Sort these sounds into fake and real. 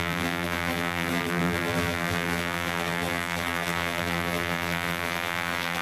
fake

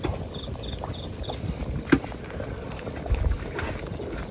fake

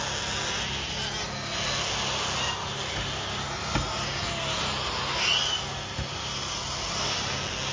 real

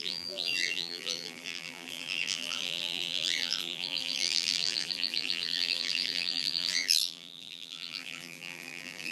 fake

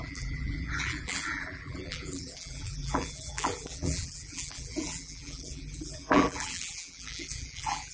fake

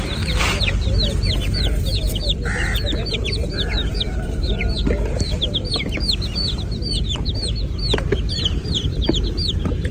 fake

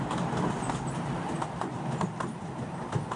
real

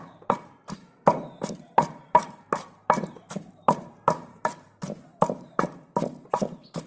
fake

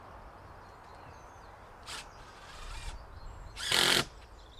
real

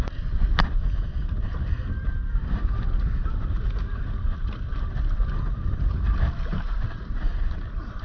real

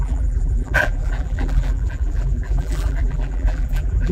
fake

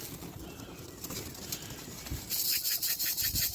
real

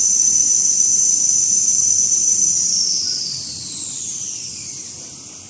fake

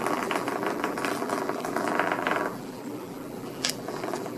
fake